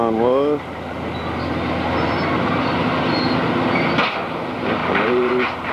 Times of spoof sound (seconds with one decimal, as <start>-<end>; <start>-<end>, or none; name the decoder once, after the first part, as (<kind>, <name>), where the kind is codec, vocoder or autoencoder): 4.8-5.3 (vocoder, BigVGAN v2)